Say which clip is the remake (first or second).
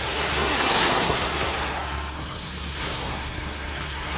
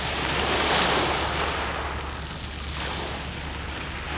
first